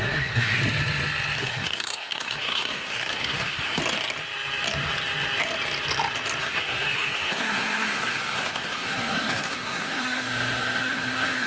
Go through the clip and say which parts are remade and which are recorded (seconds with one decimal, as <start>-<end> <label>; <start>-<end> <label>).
0.0-0.6 remade; 0.6-1.4 recorded; 1.4-3.8 remade; 3.8-6.4 recorded; 6.4-11.5 remade